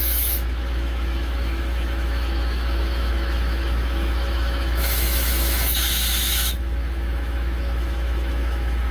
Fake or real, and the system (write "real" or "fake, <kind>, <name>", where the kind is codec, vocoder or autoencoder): fake, autoencoder, DAC-VAE